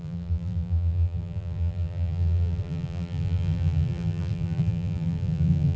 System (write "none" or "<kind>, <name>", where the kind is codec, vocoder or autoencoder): vocoder, BigVGAN v2